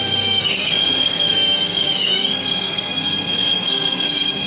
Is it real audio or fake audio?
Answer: fake